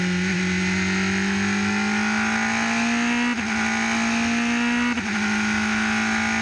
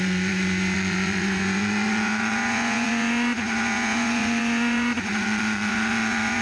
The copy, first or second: second